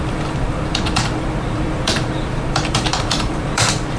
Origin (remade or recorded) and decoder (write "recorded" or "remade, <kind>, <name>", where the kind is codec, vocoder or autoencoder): remade, vocoder, BigVGAN v2